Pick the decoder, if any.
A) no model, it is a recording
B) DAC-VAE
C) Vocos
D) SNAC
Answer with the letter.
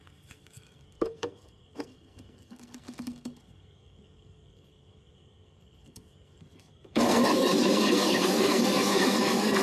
D